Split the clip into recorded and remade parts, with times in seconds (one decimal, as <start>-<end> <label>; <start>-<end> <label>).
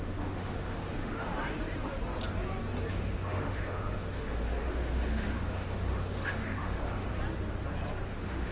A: 0.0-1.3 remade; 1.3-2.9 recorded; 2.9-7.1 remade; 7.1-8.1 recorded; 8.1-8.5 remade